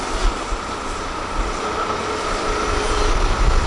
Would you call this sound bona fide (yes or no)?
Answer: yes